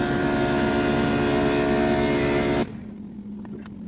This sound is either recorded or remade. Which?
recorded